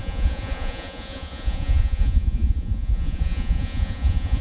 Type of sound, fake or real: fake